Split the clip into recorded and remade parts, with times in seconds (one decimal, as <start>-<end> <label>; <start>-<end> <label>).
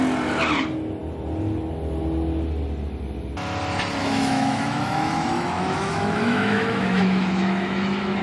0.0-4.0 recorded; 4.0-8.2 remade